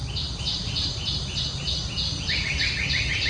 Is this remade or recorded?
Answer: recorded